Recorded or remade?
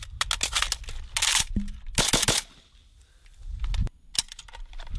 recorded